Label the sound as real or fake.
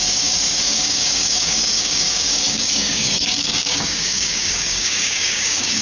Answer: fake